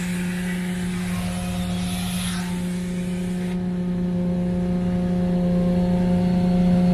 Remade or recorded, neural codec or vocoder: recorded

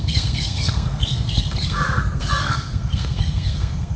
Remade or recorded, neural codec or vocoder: remade, codec, SNAC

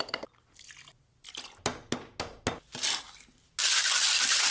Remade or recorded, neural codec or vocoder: recorded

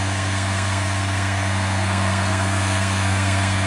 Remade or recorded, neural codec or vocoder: remade, codec, SNAC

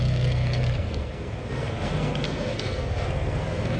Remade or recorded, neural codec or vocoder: remade, codec, SNAC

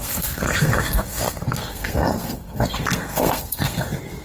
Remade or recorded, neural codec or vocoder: remade, codec, SNAC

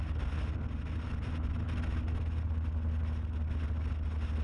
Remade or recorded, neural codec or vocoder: recorded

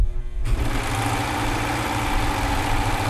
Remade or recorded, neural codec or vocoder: recorded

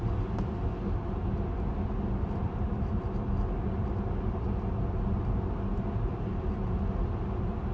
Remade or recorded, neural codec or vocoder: recorded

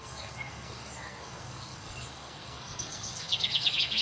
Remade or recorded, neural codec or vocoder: remade, codec, SNAC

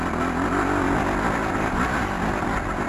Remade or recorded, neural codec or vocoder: recorded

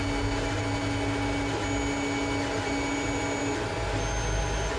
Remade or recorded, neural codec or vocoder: recorded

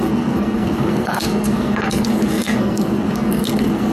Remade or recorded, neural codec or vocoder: remade, codec, SNAC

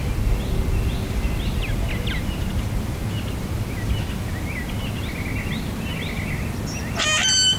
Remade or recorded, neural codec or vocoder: recorded